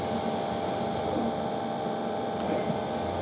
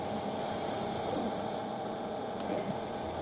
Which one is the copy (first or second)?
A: second